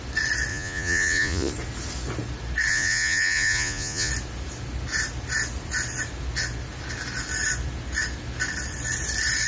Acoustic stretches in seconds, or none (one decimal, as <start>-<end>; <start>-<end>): 0.0-0.5; 1.5-2.7; 4.1-9.5